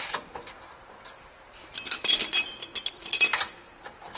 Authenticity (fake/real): real